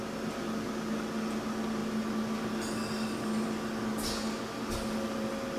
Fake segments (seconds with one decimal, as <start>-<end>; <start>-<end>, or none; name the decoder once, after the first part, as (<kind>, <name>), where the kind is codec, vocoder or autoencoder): none